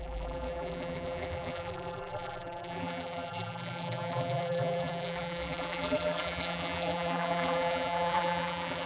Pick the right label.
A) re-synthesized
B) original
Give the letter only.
A